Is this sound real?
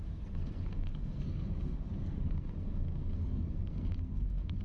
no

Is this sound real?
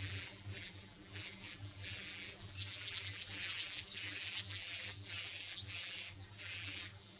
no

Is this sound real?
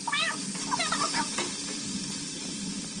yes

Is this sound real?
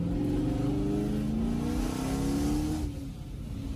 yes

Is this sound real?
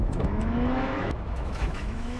no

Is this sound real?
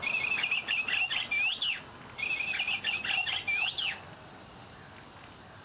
yes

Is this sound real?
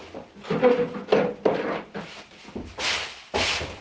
yes